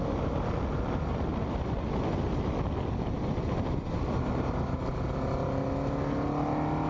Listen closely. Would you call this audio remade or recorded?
recorded